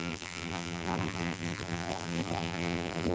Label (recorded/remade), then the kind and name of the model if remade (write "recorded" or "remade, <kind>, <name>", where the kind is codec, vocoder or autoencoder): remade, vocoder, BigVGAN v2